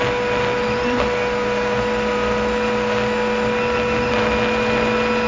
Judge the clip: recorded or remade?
recorded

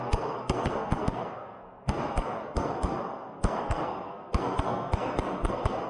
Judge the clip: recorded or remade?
remade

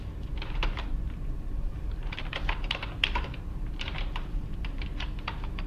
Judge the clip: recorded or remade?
remade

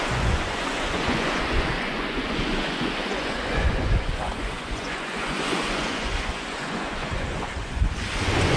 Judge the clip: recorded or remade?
remade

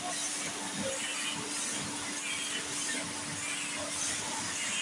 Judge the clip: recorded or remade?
recorded